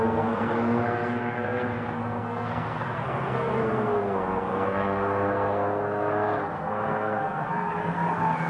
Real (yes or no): no